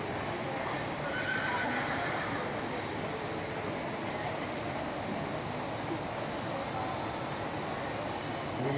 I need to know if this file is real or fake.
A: real